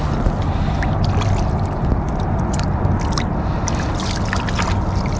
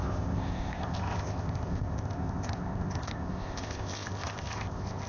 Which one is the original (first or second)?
first